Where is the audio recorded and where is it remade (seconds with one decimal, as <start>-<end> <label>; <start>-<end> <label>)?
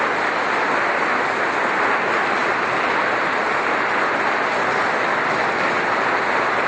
0.0-6.7 recorded